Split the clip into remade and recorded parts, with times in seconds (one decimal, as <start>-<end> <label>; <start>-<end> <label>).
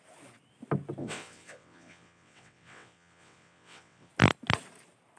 0.0-1.0 recorded; 1.0-4.1 remade; 4.1-5.2 recorded